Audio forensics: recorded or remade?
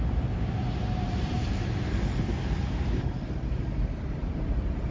remade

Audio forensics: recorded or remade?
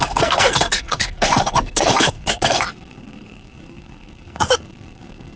remade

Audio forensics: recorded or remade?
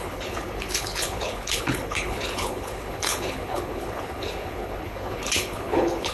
remade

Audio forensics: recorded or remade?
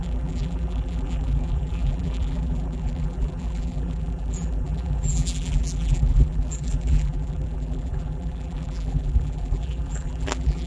remade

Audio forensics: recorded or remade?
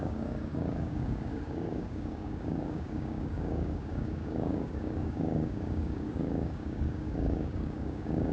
remade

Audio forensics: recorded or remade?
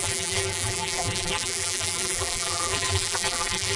remade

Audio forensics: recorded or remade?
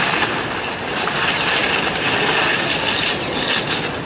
recorded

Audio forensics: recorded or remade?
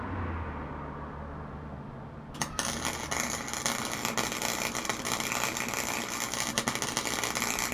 recorded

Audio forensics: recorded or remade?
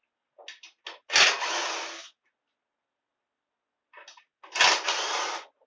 recorded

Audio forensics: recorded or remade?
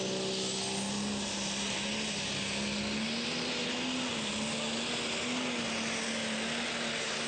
recorded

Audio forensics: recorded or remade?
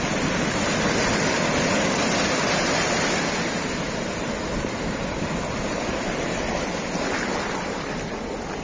recorded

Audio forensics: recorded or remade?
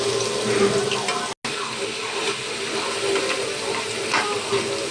recorded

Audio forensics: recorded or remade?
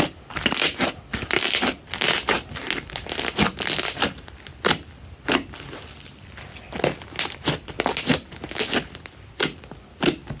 recorded